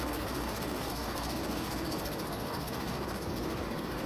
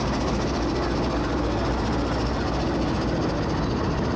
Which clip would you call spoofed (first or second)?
first